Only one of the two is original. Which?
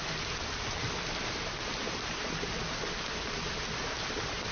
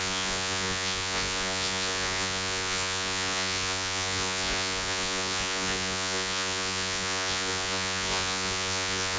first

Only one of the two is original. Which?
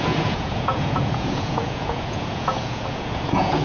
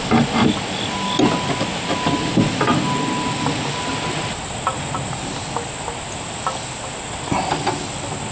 second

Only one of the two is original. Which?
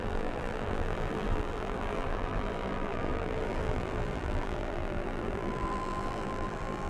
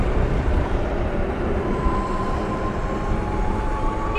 second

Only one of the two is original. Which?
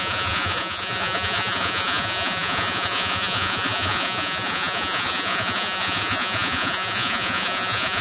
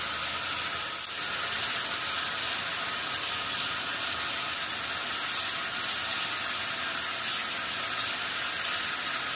second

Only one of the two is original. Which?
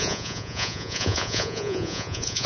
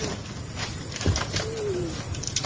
second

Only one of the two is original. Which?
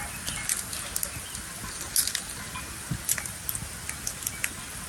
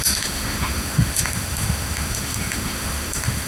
first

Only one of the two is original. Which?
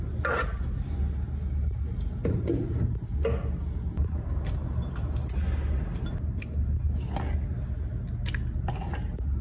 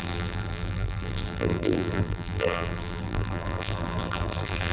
first